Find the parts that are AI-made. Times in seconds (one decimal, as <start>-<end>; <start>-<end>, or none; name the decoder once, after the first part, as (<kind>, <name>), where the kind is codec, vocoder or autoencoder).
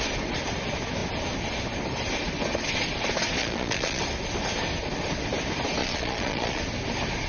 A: 3.4-4.0 (vocoder, Vocos); 5.8-6.6